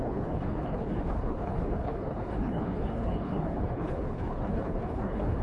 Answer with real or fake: fake